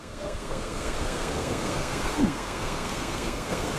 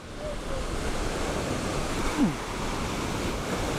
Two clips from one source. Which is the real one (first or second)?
second